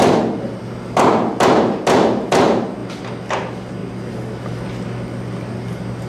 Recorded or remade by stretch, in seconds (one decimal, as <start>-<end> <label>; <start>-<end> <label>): 0.0-6.1 recorded